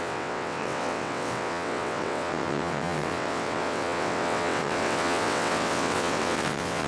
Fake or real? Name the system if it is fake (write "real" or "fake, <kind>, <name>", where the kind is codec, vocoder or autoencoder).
fake, vocoder, WaveNeXt